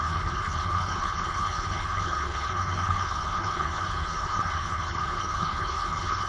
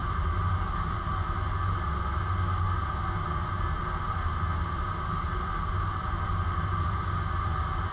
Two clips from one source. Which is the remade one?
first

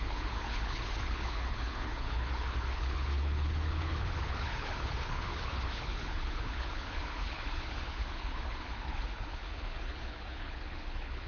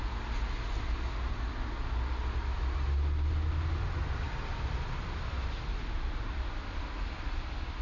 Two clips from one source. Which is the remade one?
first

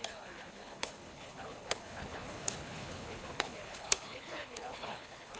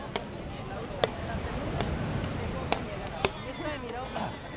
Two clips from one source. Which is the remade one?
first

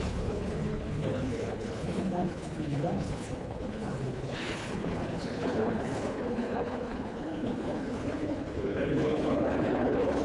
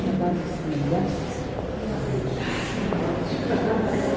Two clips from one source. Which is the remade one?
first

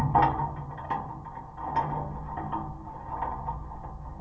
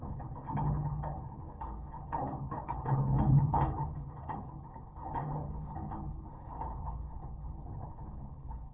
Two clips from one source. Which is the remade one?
second